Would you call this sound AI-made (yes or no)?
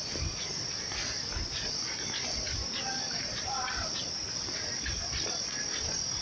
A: yes